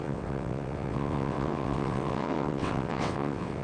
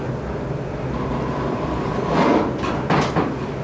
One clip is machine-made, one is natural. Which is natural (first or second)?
second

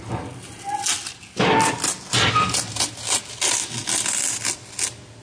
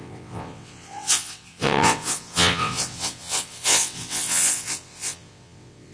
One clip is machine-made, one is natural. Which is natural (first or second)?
first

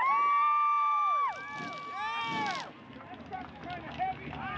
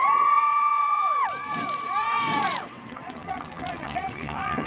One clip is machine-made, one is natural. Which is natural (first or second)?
first